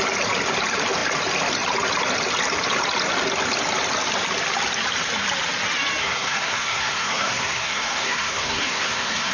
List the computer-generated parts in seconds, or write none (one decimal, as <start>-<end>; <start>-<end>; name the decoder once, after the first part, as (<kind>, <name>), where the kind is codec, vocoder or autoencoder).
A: 6.0-9.3 (codec, SNAC)